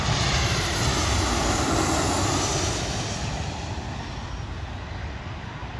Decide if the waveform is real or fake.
real